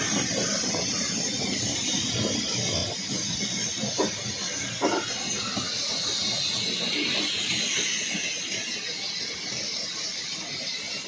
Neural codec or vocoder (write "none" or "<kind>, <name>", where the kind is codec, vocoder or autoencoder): none